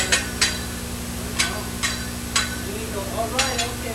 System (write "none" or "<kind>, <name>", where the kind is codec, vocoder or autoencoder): none